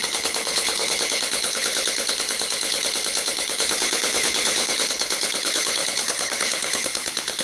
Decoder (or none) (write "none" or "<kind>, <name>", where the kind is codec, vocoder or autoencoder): codec, HILCodec